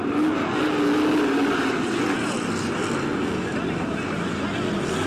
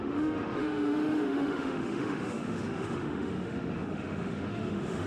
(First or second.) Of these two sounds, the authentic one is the first